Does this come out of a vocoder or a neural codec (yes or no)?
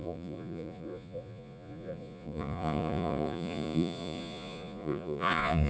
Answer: yes